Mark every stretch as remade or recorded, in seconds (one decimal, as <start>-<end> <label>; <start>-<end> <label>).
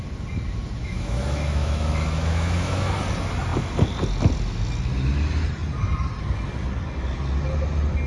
0.0-0.8 recorded; 0.8-2.9 remade; 2.9-8.1 recorded